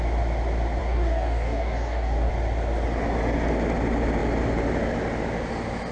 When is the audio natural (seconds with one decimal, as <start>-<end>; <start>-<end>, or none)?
0.0-0.8; 2.3-5.9